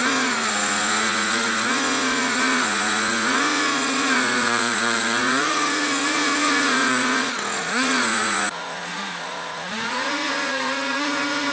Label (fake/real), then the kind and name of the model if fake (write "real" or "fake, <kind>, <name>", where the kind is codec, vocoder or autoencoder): fake, vocoder, Vocos